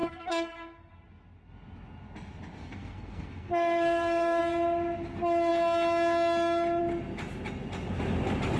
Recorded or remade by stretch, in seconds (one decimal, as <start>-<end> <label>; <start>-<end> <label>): 0.0-0.9 remade; 0.9-2.6 recorded; 2.6-4.4 remade; 4.4-8.6 recorded